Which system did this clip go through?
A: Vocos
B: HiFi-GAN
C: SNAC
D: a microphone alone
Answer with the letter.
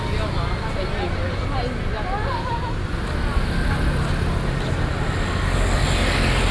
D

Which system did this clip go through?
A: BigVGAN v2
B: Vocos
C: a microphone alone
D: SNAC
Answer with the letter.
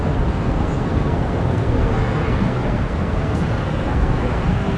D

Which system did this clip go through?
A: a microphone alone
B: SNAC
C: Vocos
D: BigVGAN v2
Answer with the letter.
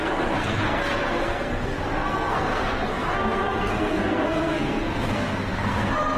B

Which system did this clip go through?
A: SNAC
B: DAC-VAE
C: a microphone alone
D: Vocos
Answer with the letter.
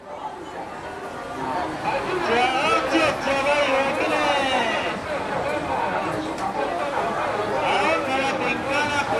C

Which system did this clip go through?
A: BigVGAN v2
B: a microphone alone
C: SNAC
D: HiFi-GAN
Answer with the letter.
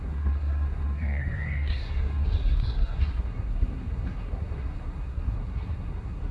C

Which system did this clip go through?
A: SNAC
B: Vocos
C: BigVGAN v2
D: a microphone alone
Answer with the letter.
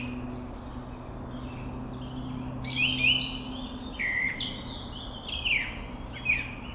D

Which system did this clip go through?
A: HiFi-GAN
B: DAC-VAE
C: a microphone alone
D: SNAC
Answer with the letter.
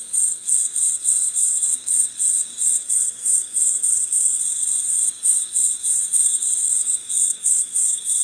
D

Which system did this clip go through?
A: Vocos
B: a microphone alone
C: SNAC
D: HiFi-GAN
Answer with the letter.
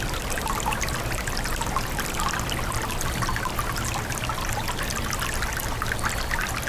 B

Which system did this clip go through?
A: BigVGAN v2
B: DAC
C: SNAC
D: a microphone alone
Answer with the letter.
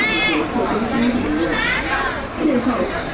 D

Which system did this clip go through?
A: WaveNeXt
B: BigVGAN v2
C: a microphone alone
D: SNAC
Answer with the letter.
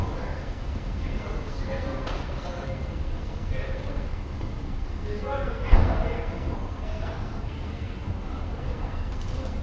D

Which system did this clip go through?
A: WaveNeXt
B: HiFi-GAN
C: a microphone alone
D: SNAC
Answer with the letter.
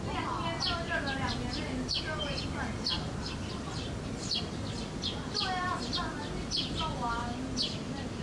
C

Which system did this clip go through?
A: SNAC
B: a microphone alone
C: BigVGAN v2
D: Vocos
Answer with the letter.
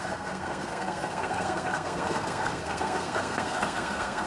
A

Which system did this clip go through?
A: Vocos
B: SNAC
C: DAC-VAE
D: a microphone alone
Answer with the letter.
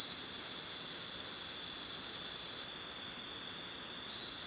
D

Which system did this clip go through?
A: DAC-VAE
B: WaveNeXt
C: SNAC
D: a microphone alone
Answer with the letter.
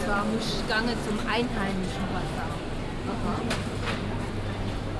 D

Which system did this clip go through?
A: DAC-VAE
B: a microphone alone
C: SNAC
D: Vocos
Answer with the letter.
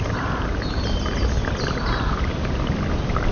B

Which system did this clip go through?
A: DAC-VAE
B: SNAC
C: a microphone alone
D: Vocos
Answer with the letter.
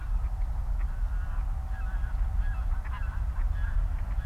C